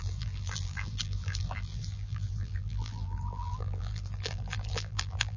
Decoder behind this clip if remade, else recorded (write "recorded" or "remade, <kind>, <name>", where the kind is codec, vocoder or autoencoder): remade, vocoder, BigVGAN v2